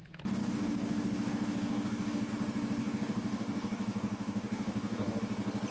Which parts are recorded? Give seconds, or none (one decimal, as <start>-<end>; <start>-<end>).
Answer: 0.0-0.4; 2.3-2.8; 5.2-5.7